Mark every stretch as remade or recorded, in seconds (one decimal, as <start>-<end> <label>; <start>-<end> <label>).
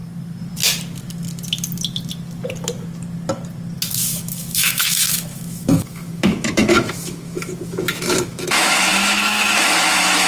0.0-3.9 recorded; 3.9-10.3 remade